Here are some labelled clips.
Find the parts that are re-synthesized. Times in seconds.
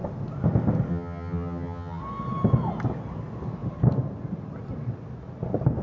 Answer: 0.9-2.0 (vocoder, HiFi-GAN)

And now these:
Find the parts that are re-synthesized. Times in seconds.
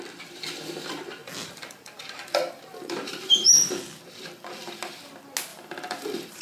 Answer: 1.2-5.0 (vocoder, BigVGAN v2); 5.5-6.4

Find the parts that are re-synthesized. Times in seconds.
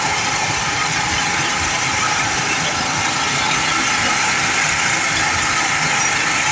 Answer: none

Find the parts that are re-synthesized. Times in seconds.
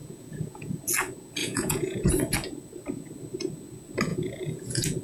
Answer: 0.0-0.8 (vocoder, Vocos); 1.4-2.1; 4.1-5.0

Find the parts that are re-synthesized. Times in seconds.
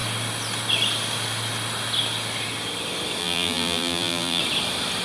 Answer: 3.2-4.4 (vocoder, BigVGAN v2)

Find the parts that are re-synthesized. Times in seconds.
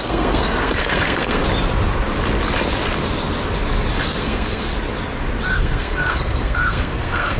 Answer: 0.0-1.4 (codec, SNAC); 3.9-4.7; 5.5-7.4